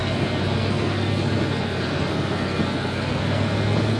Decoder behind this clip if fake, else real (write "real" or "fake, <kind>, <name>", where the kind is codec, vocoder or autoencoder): fake, codec, SNAC